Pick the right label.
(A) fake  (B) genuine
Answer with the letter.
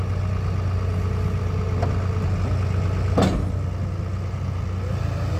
B